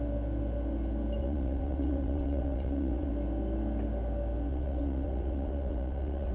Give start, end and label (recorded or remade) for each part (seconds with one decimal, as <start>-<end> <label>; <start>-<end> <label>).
0.0-1.2 recorded; 1.2-3.1 remade; 3.1-4.5 recorded; 4.5-6.3 remade